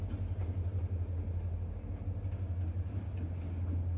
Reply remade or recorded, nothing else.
recorded